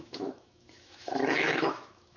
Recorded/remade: remade